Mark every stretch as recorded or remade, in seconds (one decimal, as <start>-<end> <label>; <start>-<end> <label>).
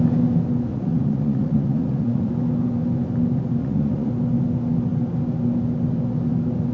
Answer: 0.0-0.7 recorded; 0.7-2.3 remade; 2.3-3.6 recorded; 3.6-4.1 remade; 4.1-6.7 recorded